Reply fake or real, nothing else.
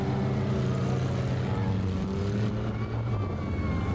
real